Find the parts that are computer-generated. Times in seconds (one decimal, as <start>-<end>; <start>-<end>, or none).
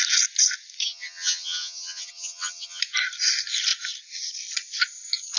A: 0.8-2.8